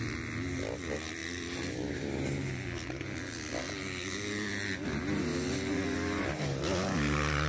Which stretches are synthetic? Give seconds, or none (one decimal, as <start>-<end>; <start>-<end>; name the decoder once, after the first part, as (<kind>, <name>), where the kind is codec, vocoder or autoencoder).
none